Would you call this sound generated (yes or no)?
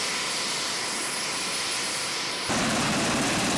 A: yes